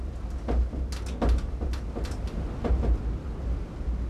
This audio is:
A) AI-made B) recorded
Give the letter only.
B